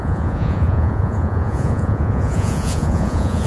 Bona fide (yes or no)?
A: no